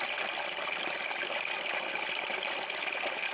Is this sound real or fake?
real